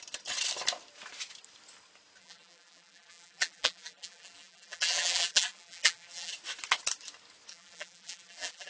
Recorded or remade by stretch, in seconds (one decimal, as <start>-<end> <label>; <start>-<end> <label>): 0.0-2.2 recorded; 2.2-6.3 remade; 6.3-7.5 recorded; 7.5-8.7 remade